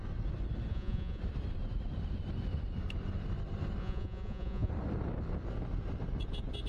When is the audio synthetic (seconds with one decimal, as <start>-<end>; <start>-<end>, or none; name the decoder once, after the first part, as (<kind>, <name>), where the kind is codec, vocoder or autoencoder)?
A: 0.7-1.2 (vocoder, Vocos); 3.8-4.7